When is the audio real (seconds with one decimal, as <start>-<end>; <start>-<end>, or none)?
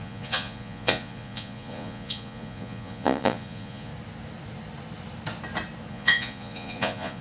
3.9-5.9